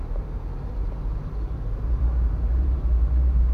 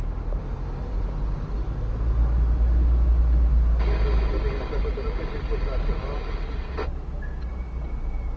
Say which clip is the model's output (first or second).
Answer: first